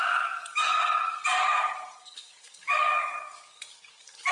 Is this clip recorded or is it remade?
remade